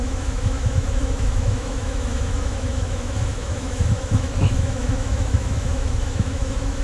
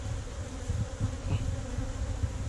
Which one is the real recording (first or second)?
second